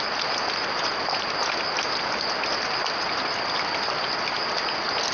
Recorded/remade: recorded